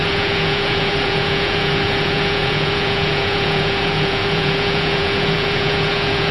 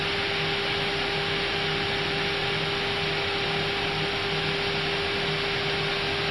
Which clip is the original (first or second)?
second